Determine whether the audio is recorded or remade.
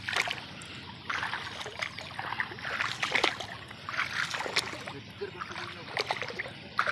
recorded